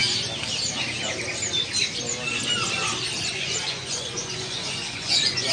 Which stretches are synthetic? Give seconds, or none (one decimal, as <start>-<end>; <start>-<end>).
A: 3.3-5.5

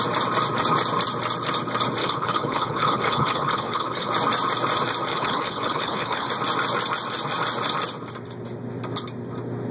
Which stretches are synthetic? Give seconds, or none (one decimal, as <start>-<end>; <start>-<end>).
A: 2.0-4.1; 5.1-6.3

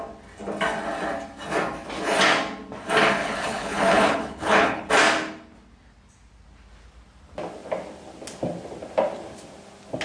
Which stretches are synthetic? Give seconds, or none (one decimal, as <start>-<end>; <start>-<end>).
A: 3.2-4.9

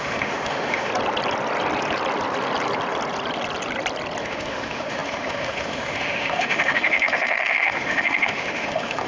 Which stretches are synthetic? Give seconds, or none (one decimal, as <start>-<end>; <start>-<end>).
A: 0.0-0.9; 4.2-9.1